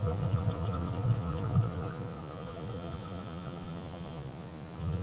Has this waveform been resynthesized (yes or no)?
yes